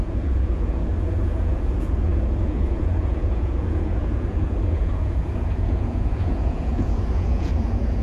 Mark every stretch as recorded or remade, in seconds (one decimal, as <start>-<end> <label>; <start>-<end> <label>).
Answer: 0.0-8.0 remade